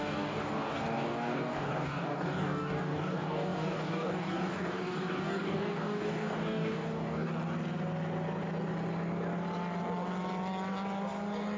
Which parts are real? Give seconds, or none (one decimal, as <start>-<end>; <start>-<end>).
7.3-11.6